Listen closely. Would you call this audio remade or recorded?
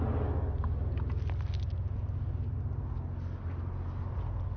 recorded